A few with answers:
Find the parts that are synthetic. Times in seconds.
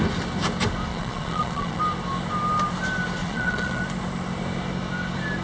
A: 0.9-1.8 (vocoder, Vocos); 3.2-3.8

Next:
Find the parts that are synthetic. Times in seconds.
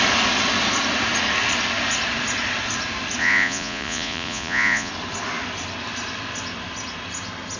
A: 3.2-4.9 (vocoder, Vocos)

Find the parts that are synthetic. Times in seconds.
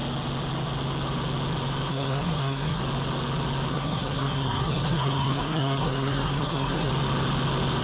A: 1.9-2.8 (codec, SNAC); 3.7-6.9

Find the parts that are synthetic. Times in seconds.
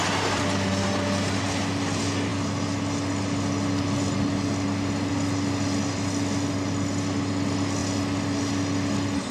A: none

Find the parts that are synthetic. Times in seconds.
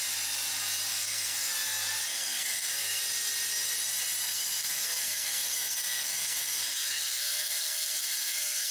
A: 0.9-1.5 (codec, SNAC); 2.1-3.0; 4.2-8.7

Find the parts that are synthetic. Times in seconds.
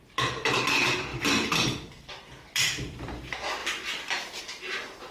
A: 1.1-3.2 (vocoder, BigVGAN v2); 3.6-4.4